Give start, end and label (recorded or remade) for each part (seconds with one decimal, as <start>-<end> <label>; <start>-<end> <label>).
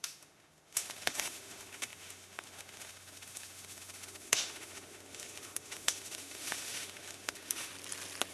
0.0-7.7 remade; 7.7-8.3 recorded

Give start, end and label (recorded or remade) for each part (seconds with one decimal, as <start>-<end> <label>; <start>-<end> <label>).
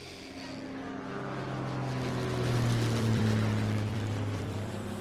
0.0-3.0 recorded; 3.0-5.0 remade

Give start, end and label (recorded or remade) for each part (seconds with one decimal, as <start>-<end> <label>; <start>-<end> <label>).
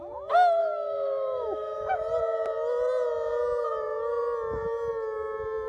0.0-0.6 recorded; 0.6-1.9 remade; 1.9-5.7 recorded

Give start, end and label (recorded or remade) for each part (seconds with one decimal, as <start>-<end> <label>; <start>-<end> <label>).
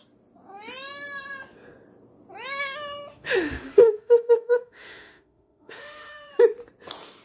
0.0-3.1 recorded; 3.1-6.3 remade; 6.3-7.2 recorded